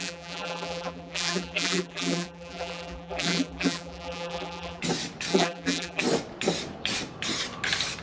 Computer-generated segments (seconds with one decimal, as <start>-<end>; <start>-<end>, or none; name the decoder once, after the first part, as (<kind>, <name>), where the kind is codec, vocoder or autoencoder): 0.0-4.8 (vocoder, BigVGAN v2); 5.3-6.0